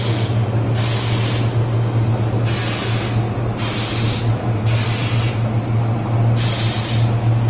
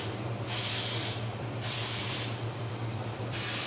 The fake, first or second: second